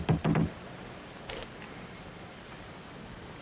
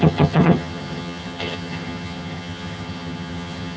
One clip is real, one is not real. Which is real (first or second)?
first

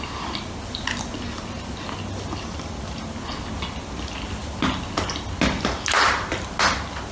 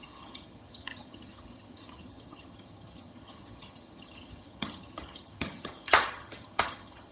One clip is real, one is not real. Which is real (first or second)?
first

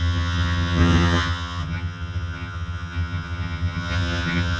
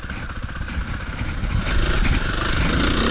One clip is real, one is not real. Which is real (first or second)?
second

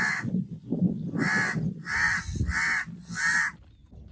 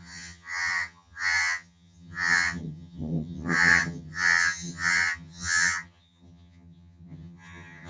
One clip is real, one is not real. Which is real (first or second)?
first